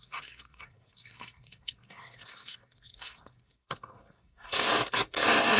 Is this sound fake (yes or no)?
yes